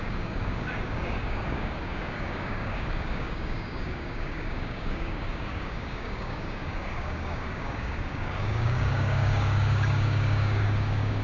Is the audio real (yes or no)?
no